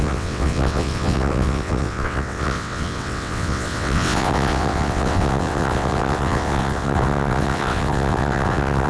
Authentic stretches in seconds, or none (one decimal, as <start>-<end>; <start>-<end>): none